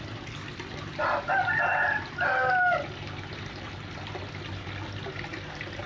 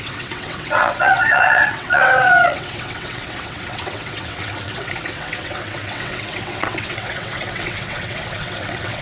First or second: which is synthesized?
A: second